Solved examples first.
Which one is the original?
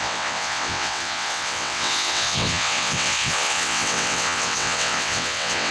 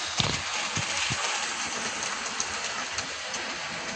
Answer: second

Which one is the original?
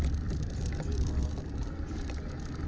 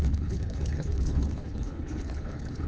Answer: first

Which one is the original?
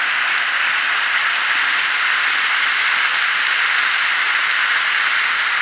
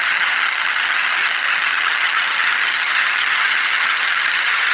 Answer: first